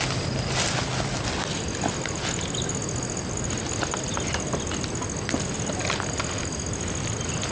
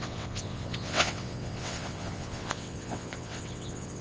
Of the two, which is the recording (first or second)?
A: first